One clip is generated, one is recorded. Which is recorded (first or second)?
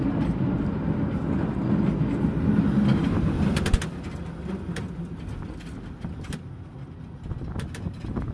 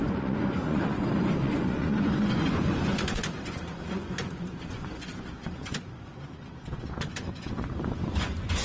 first